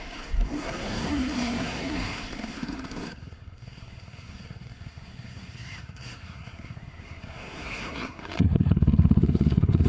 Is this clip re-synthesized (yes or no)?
yes